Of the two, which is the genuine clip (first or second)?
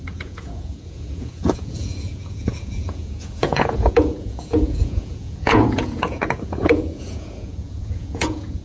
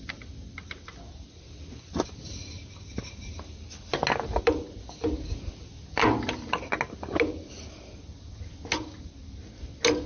second